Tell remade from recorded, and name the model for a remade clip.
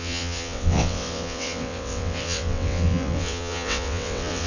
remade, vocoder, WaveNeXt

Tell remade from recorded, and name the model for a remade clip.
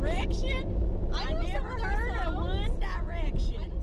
recorded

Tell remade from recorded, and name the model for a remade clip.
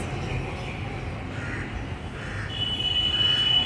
recorded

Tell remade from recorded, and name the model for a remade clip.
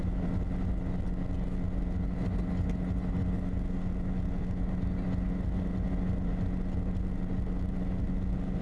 recorded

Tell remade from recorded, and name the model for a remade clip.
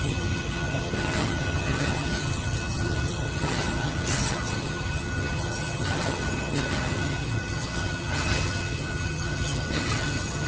remade, vocoder, HiFi-GAN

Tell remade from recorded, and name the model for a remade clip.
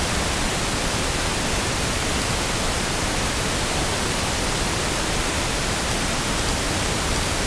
recorded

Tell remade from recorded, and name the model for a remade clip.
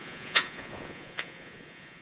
remade, vocoder, Vocos